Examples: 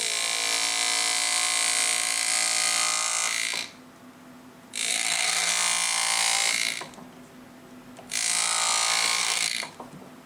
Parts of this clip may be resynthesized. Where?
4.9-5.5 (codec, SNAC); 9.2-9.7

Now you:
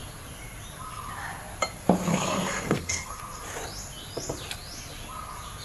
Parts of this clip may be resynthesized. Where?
2.1-3.2 (codec, SNAC)

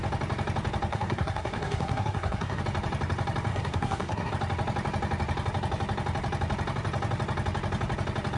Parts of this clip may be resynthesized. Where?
0.9-2.6 (codec, SNAC); 3.5-4.3

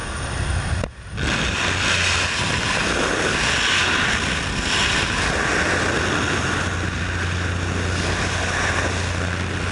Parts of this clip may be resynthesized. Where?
none